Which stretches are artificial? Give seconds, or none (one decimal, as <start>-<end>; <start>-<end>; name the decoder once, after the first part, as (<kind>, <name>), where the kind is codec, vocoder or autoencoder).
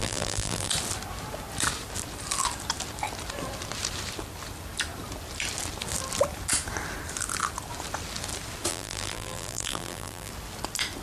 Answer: 0.0-0.7 (vocoder, BigVGAN v2); 8.7-10.3